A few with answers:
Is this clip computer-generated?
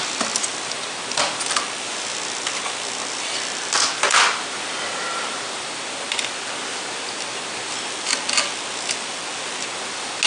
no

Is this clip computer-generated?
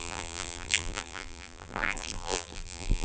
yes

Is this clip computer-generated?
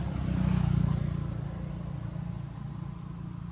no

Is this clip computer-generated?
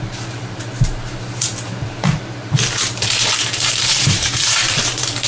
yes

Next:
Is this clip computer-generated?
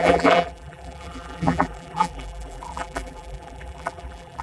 yes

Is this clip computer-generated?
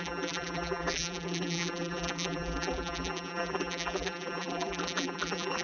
yes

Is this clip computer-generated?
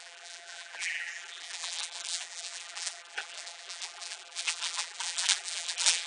yes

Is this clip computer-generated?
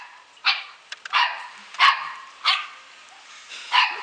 yes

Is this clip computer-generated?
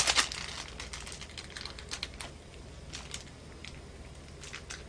no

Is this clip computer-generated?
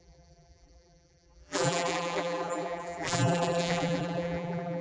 yes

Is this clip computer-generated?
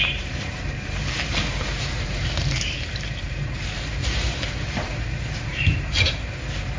yes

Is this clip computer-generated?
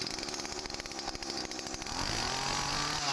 no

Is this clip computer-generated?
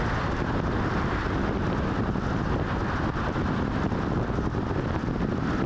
no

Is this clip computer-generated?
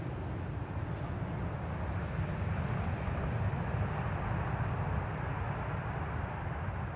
no